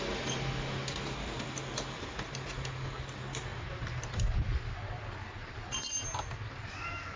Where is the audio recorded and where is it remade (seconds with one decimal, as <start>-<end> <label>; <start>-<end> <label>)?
0.0-7.2 recorded